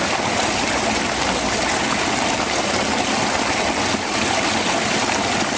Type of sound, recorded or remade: recorded